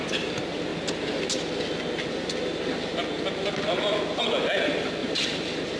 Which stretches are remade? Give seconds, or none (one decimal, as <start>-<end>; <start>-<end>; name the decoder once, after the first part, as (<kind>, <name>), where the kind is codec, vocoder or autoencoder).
5.0-5.8 (vocoder, BigVGAN v2)